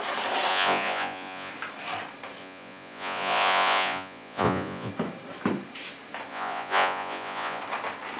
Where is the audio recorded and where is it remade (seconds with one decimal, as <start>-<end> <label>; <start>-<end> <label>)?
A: 0.0-0.5 recorded; 0.5-1.5 remade; 1.5-2.4 recorded; 2.4-4.9 remade; 4.9-6.3 recorded; 6.3-7.6 remade; 7.6-8.2 recorded

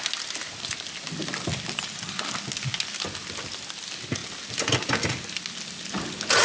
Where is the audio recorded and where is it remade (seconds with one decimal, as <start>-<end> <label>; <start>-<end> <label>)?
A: 0.0-6.4 recorded

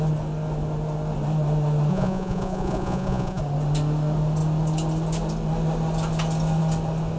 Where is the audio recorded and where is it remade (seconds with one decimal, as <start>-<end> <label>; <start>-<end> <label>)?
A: 0.0-1.9 recorded; 1.9-3.4 remade; 3.4-7.2 recorded